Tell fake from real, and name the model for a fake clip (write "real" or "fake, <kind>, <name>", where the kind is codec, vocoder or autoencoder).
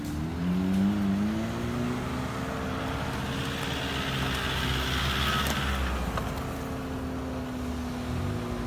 real